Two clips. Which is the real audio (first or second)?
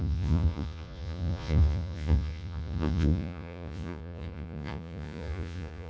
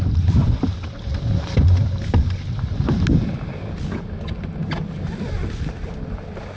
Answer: second